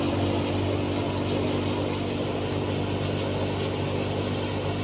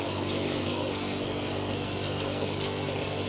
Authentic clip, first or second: first